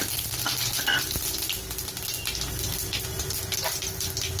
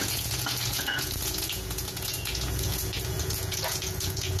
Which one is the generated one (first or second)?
second